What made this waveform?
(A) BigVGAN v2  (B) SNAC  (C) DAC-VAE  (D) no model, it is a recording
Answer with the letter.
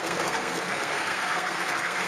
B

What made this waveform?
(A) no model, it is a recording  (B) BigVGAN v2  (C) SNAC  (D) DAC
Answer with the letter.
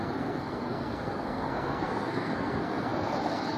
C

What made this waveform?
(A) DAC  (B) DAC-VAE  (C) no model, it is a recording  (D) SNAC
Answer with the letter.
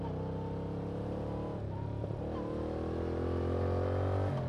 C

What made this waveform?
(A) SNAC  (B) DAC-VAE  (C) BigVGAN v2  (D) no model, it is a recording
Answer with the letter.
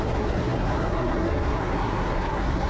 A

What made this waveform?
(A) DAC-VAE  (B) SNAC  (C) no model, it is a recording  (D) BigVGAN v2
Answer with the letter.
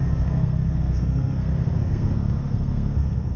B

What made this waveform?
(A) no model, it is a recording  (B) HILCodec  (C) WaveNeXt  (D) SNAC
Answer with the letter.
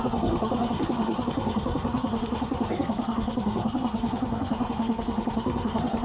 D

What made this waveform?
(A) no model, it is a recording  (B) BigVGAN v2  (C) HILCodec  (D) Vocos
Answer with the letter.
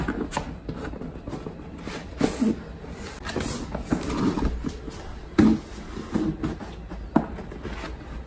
A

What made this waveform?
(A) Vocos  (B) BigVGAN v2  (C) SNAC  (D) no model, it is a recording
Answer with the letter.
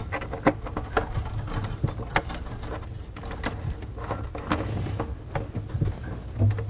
D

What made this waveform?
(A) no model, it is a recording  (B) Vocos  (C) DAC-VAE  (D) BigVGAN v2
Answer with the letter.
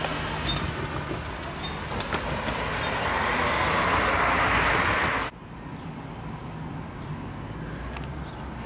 A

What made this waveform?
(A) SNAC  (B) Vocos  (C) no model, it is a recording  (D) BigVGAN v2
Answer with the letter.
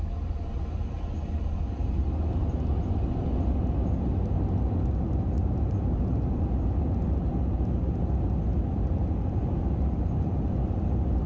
C